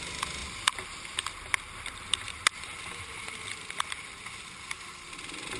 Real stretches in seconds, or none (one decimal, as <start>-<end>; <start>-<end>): 0.0-5.6